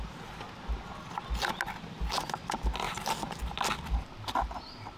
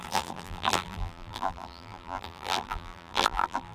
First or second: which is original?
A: first